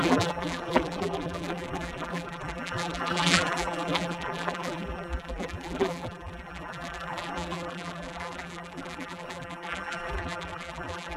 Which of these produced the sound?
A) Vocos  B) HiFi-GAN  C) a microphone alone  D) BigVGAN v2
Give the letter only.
D